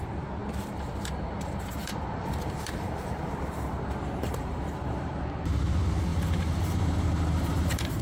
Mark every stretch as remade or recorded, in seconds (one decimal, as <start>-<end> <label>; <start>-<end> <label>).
0.0-0.4 recorded; 0.4-5.2 remade; 5.2-6.1 recorded; 6.1-8.0 remade